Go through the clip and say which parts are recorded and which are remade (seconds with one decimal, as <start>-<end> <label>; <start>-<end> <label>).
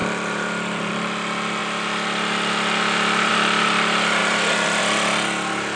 0.0-0.9 remade; 0.9-4.2 recorded; 4.2-4.8 remade; 4.8-5.8 recorded